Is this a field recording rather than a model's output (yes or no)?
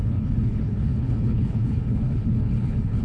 no